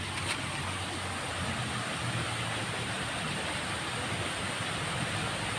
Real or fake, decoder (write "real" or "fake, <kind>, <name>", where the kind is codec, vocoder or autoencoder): real